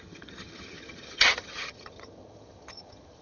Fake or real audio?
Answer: fake